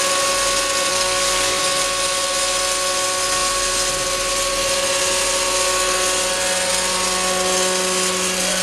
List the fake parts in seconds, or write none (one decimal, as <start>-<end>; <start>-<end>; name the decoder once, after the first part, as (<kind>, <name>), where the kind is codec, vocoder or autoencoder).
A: 0.9-1.6 (codec, SNAC)